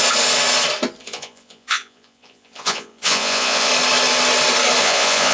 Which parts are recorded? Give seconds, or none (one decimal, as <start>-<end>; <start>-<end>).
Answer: 0.0-1.0; 3.7-4.8